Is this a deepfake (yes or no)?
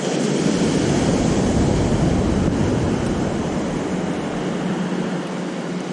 no